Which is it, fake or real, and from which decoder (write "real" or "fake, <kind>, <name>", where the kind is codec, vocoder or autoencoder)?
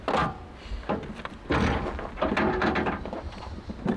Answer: real